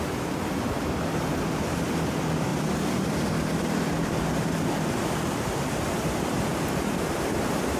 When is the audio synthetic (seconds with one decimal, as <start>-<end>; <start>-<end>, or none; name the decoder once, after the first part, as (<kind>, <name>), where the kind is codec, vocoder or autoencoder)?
0.0-7.8 (vocoder, BigVGAN v2)

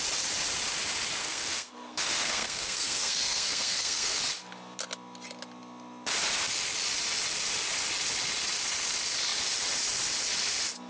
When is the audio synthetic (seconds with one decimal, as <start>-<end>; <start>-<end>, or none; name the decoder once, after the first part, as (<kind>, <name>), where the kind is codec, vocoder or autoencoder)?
1.2-4.2 (codec, SNAC)

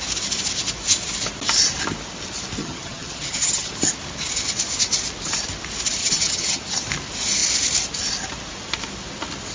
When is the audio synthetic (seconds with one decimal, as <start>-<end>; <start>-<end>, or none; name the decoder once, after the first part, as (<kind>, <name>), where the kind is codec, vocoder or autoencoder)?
2.6-3.7 (vocoder, HiFi-GAN); 6.0-6.6

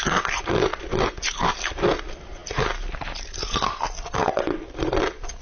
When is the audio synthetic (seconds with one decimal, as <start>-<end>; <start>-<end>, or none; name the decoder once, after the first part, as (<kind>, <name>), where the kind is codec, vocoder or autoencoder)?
none

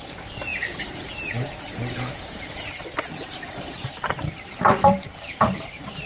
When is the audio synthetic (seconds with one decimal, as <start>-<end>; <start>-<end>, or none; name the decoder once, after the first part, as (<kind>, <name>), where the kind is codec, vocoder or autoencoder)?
0.5-2.4 (vocoder, BigVGAN v2); 3.1-5.3